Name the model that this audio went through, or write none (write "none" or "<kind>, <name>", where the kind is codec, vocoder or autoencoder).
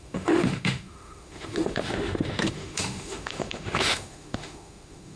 autoencoder, DAC-VAE